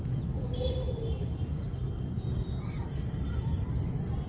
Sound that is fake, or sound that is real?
real